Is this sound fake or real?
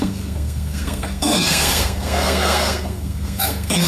fake